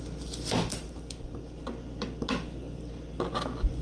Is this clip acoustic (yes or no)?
yes